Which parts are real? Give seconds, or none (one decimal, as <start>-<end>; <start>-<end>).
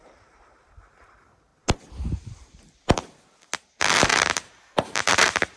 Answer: 1.5-3.6